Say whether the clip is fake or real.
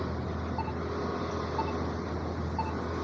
real